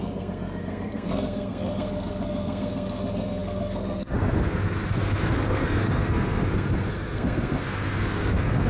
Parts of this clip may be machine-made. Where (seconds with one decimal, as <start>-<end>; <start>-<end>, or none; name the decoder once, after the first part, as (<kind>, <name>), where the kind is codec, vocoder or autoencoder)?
0.0-8.7 (codec, SNAC)